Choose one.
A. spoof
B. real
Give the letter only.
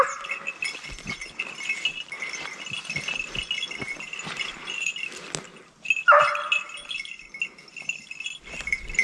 B